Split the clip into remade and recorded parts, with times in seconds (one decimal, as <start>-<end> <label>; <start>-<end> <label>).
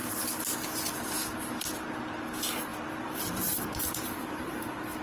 0.0-2.7 recorded; 2.7-5.0 remade